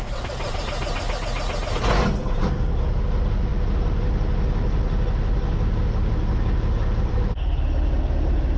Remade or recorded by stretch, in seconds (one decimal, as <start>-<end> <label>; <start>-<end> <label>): 0.0-8.6 recorded